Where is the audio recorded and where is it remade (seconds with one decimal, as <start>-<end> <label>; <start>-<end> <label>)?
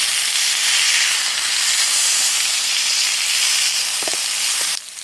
0.0-5.0 recorded